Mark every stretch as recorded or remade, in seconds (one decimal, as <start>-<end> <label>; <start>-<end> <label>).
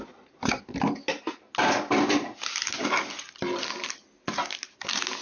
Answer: 0.0-5.2 recorded